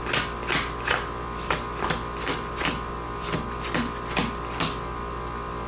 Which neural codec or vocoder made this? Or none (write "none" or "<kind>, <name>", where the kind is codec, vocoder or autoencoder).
none